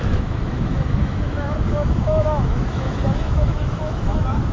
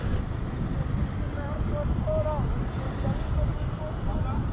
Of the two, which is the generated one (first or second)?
first